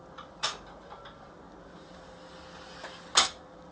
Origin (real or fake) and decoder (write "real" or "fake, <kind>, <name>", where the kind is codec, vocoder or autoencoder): real